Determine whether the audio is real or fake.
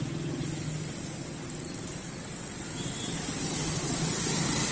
real